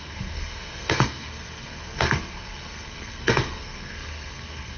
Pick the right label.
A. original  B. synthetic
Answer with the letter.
B